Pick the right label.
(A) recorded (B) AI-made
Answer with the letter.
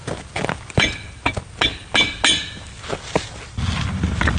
A